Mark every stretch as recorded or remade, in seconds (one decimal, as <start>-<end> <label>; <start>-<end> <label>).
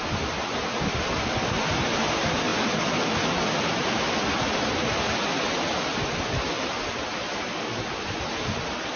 0.0-9.0 remade